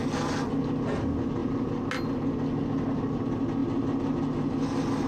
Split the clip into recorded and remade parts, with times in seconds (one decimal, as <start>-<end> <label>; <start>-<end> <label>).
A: 0.0-3.6 recorded; 3.6-5.1 remade